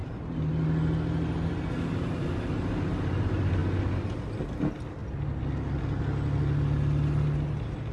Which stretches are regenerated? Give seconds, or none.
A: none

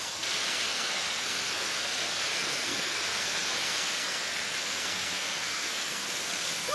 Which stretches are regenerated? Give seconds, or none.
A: 0.0-6.7 (codec, SNAC)

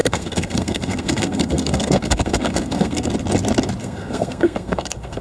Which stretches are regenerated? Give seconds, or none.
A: 0.0-3.1 (codec, SNAC); 3.8-5.2

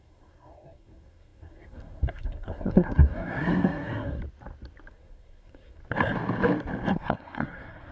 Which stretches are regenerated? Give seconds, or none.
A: 0.0-4.2 (codec, SNAC); 4.9-5.8; 6.9-7.9

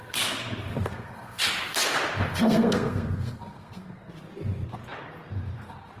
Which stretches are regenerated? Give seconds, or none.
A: 0.7-1.4 (codec, SNAC); 2.3-4.1

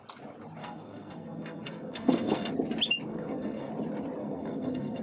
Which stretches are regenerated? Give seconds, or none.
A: 0.6-2.5 (codec, SNAC); 3.1-3.7; 4.2-5.0